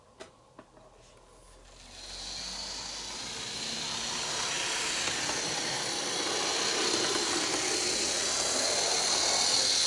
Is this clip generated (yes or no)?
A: no